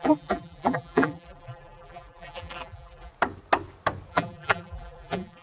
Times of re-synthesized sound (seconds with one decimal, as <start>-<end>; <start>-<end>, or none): 0.0-3.1; 4.1-5.4